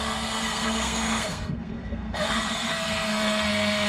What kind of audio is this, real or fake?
fake